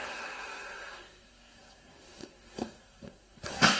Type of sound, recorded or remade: remade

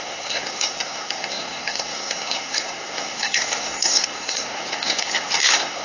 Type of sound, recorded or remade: remade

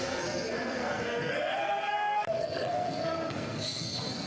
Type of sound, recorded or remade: remade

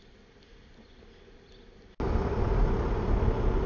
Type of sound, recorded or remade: recorded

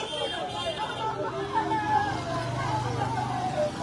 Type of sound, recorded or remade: recorded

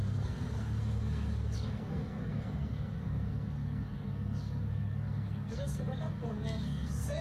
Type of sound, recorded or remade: remade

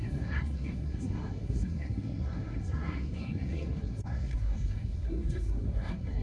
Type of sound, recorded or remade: remade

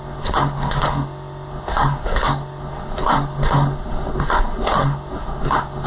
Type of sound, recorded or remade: remade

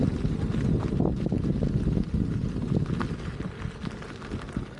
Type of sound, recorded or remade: recorded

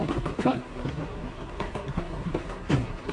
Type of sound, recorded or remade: remade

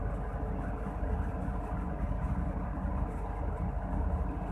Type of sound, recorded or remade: recorded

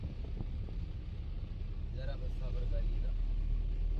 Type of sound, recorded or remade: recorded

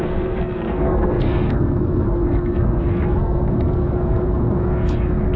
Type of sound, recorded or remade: remade